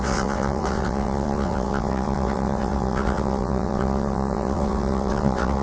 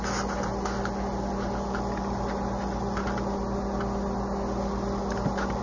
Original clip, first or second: second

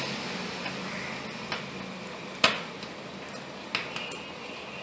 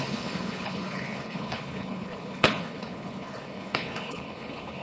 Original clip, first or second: first